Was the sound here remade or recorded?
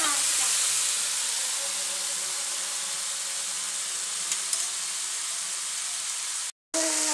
recorded